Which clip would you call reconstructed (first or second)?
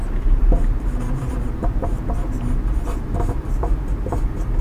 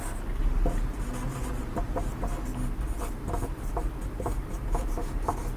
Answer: first